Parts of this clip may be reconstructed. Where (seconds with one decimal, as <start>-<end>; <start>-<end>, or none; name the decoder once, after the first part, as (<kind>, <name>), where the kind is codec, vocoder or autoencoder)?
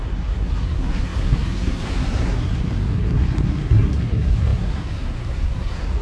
0.0-6.0 (codec, SNAC)